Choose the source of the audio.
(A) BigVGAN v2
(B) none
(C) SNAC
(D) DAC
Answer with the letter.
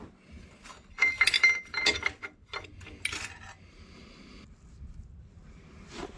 B